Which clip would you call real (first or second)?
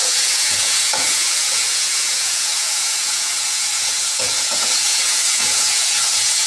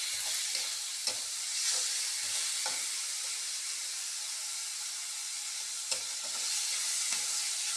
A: second